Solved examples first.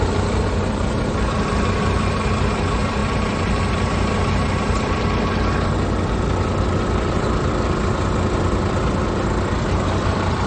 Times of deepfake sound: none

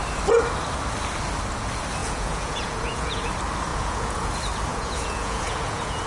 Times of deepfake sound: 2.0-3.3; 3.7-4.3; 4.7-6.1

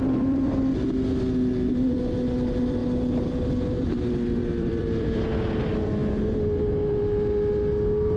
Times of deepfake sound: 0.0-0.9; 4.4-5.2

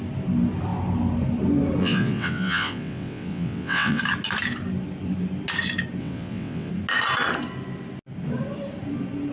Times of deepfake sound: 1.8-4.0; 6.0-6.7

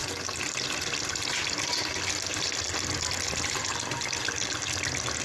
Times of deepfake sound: none